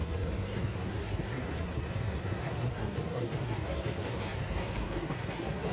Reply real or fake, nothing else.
fake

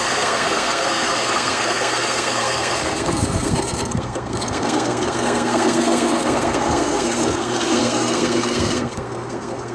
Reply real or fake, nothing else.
fake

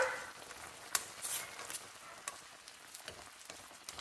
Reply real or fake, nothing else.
real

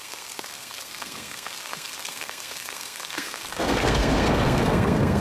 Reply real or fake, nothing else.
fake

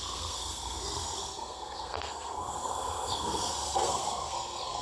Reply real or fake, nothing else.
fake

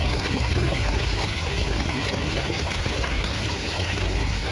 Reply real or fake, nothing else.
fake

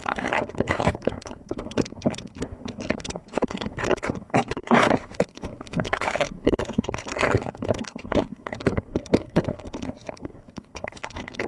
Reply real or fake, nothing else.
fake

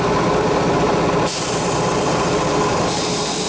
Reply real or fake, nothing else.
real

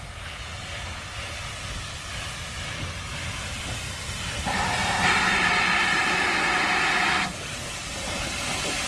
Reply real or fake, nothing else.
real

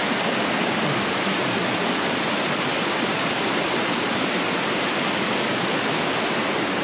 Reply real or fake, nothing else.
real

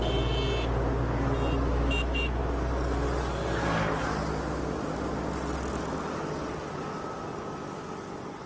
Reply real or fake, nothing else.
real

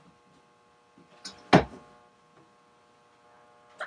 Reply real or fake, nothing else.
real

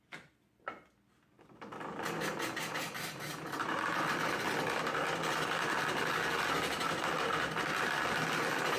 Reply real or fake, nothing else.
real